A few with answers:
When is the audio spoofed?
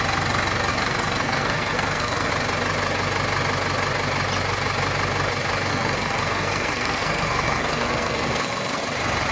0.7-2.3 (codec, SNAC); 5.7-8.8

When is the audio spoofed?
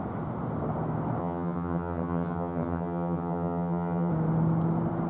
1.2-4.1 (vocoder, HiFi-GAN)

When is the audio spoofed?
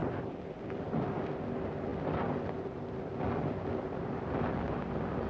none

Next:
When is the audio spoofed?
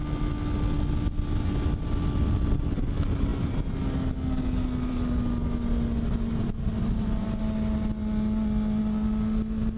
none